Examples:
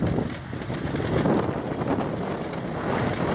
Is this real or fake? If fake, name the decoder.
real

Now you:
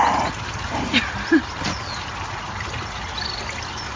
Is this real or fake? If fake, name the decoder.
real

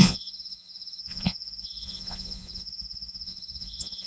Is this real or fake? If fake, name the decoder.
fake, vocoder, Vocos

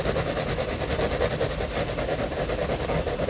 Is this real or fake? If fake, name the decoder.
real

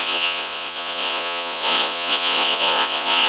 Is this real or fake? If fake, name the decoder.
fake, vocoder, Vocos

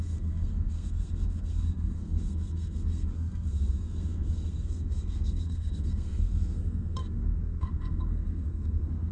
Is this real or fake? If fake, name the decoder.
fake, codec, SNAC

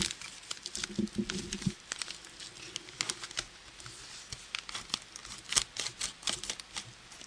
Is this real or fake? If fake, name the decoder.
real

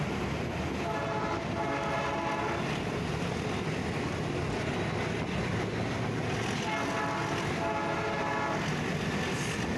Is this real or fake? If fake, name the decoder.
real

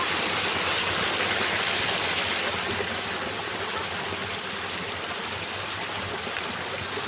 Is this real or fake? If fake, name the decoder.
real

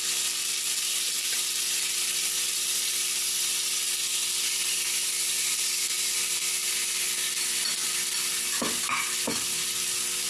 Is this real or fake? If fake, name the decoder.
real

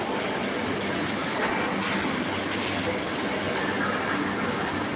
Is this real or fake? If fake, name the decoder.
real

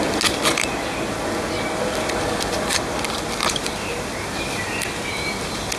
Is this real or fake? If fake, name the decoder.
real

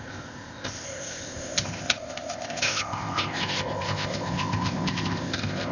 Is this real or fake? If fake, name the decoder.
fake, codec, ZipCodec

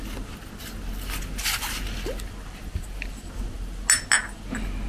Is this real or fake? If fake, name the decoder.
real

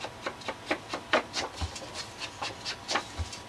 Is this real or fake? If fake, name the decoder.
real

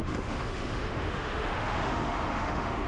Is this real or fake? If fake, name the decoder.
fake, autoencoder, DAC-VAE